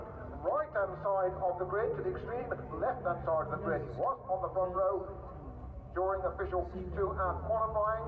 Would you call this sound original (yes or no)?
yes